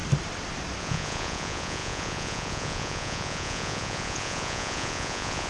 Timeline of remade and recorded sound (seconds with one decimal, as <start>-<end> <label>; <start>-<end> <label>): 0.0-0.8 recorded; 0.8-5.5 remade